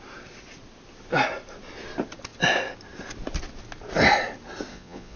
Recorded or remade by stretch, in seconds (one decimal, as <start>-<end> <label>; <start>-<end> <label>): 0.0-4.7 recorded; 4.7-5.2 remade